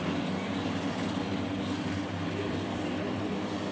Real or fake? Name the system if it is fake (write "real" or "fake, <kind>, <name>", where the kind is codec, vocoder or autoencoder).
fake, vocoder, BigVGAN v2